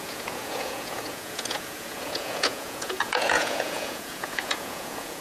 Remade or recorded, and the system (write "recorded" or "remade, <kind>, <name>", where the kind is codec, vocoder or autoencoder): remade, vocoder, Vocos